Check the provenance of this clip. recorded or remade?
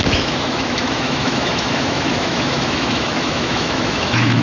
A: remade